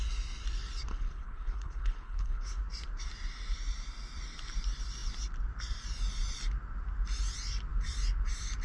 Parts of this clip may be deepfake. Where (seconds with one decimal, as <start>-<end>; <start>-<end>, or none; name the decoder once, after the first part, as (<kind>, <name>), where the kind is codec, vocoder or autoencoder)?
0.9-2.6 (codec, HILCodec)